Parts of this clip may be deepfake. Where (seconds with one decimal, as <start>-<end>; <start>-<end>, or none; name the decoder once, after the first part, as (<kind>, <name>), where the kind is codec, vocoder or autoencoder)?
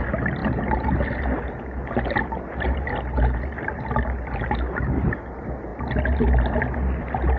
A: none